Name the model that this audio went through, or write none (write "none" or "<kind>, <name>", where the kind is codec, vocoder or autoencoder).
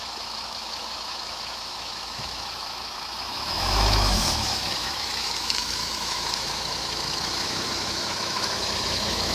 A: autoencoder, DAC-VAE